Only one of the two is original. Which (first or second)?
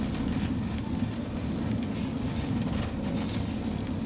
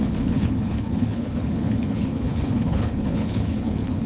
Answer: first